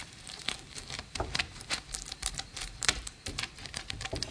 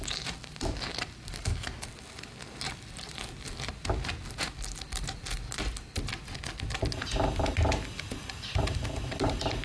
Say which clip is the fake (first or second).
first